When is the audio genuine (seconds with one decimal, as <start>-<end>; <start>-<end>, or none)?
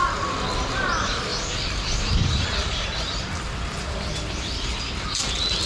0.0-1.3; 4.7-5.7